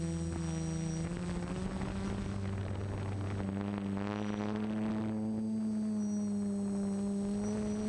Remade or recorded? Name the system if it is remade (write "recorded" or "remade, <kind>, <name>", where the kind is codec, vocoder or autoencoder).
recorded